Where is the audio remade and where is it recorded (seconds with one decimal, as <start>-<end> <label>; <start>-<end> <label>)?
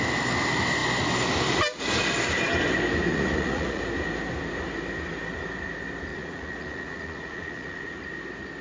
0.0-3.1 recorded; 3.1-3.8 remade; 3.8-6.1 recorded; 6.1-8.0 remade; 8.0-8.6 recorded